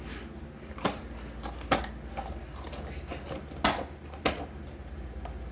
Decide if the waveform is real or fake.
real